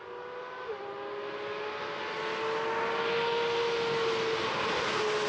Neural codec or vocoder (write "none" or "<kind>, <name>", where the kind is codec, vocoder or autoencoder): none